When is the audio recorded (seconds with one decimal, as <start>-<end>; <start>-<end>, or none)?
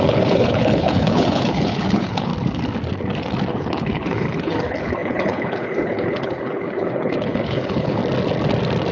2.3-3.5; 8.0-8.9